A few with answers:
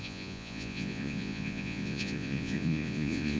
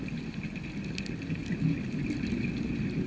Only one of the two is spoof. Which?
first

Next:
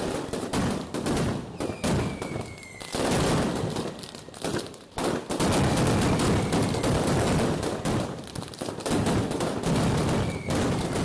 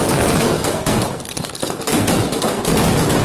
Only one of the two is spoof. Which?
second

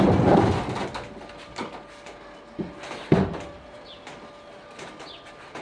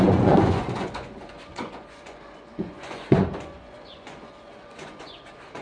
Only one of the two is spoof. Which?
second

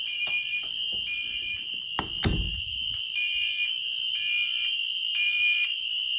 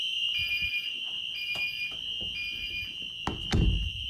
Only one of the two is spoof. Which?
first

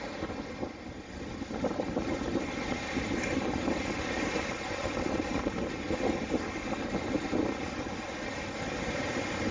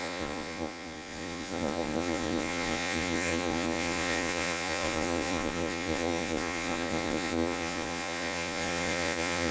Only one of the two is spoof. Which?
second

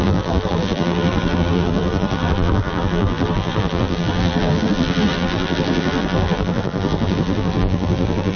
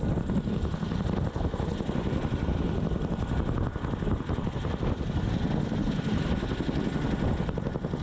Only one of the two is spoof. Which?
first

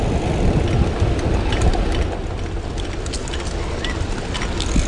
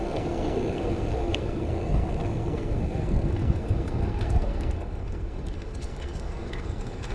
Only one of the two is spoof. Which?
second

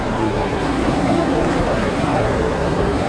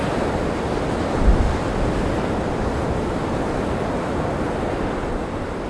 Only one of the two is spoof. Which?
first